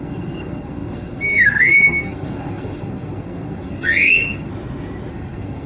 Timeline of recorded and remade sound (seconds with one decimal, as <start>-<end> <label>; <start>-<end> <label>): 0.0-4.5 remade; 4.5-5.1 recorded; 5.1-5.7 remade